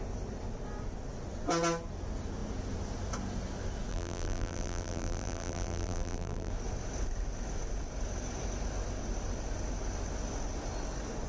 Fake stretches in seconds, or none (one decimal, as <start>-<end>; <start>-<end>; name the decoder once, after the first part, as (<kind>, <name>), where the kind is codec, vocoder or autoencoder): 3.9-6.5 (vocoder, BigVGAN v2)